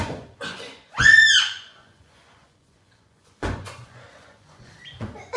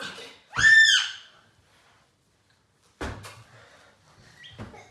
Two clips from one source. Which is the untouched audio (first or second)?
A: second